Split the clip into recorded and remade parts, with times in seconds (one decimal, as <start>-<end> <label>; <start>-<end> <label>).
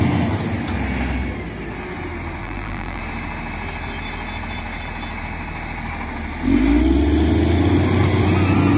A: 0.0-2.4 recorded; 2.4-3.0 remade; 3.0-8.8 recorded